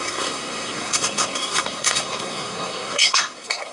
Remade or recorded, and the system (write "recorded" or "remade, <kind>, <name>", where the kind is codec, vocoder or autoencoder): remade, codec, SNAC